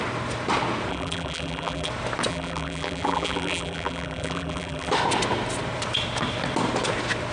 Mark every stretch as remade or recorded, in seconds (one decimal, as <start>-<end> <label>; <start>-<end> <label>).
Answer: 0.0-0.9 recorded; 0.9-1.9 remade; 1.9-2.3 recorded; 2.3-4.9 remade; 4.9-7.3 recorded